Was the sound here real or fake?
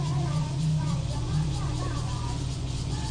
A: fake